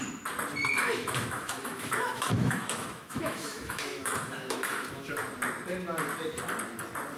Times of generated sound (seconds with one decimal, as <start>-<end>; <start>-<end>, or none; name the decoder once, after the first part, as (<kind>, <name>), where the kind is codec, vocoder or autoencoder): 0.8-5.1 (autoencoder, DAC-VAE)